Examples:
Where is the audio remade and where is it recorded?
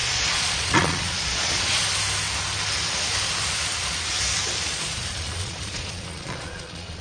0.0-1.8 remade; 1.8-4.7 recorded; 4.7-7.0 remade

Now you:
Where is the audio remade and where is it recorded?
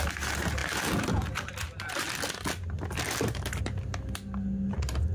0.0-5.1 recorded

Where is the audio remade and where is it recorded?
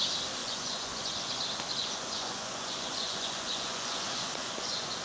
0.0-0.4 recorded; 0.4-1.4 remade; 1.4-1.8 recorded; 1.8-5.0 remade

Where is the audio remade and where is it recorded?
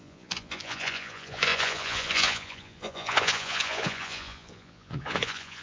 0.0-5.6 remade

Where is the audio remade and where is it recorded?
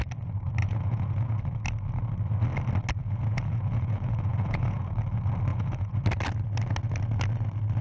0.0-0.6 recorded; 0.6-1.4 remade; 1.4-3.0 recorded; 3.0-4.8 remade; 4.8-5.5 recorded; 5.5-6.0 remade; 6.0-7.8 recorded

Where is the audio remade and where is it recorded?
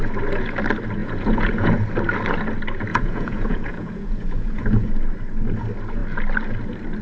0.0-1.0 recorded; 1.0-1.8 remade; 1.8-2.9 recorded; 2.9-4.9 remade; 4.9-7.0 recorded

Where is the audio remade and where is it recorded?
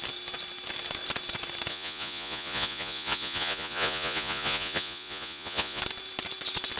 0.0-1.7 recorded; 1.7-5.8 remade; 5.8-6.8 recorded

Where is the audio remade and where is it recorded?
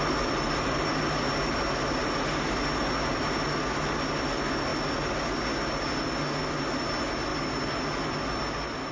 0.0-8.9 recorded